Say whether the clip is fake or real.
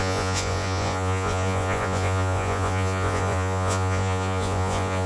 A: fake